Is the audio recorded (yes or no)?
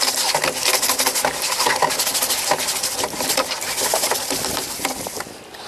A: yes